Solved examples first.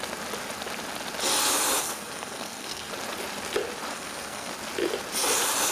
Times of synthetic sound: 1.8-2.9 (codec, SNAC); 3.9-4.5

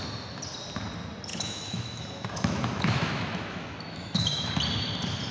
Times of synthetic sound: 1.3-4.5 (autoencoder, DAC-VAE)